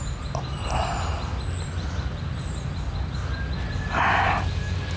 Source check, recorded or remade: recorded